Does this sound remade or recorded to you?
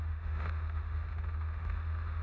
remade